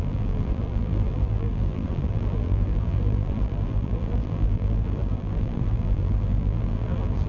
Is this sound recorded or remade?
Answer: remade